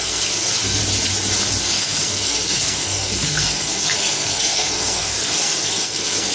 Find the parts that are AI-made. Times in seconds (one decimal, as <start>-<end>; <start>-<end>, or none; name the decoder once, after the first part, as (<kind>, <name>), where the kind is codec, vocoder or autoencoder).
0.0-0.8 (codec, SNAC); 1.6-6.3